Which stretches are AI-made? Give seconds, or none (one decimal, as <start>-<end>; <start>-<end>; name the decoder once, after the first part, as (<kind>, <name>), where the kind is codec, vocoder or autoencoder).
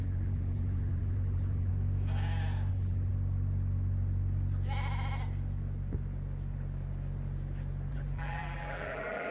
0.0-1.7 (vocoder, BigVGAN v2); 2.7-3.1; 7.9-9.3